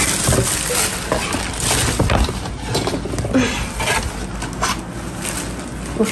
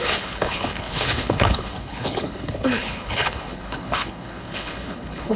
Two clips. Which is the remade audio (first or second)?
second